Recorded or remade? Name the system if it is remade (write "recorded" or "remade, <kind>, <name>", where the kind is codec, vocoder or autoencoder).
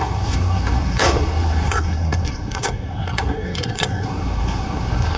remade, codec, SNAC